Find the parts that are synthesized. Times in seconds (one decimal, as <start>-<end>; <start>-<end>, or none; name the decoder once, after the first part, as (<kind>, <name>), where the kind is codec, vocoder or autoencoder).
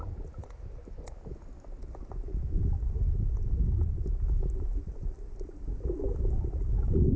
none